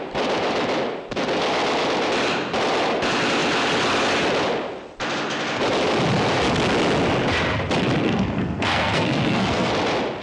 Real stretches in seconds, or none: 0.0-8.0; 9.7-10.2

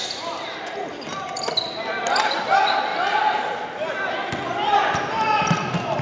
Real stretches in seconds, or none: 0.0-6.0

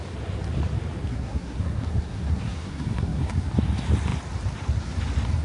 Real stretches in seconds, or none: 0.0-1.0; 3.3-5.4

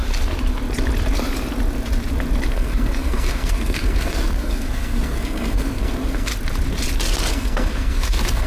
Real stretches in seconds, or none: 0.0-2.5; 6.3-7.3

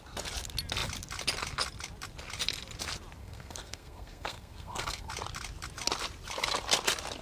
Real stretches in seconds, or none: 0.0-3.2; 5.1-7.2